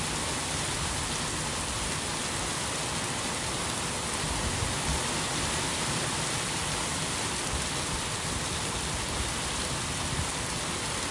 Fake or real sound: real